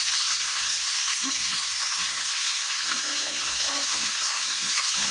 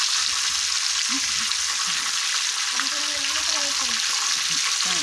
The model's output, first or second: first